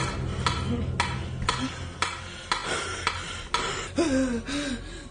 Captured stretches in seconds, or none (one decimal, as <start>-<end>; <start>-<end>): 0.0-5.1